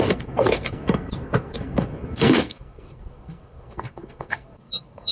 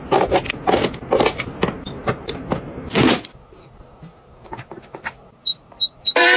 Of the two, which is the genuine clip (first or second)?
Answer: second